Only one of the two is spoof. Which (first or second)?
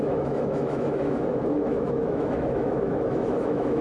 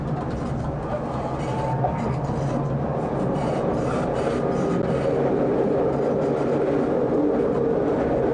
first